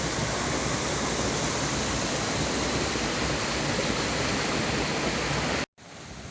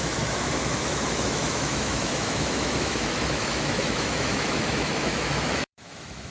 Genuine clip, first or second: first